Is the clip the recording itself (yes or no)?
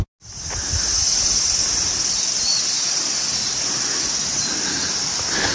yes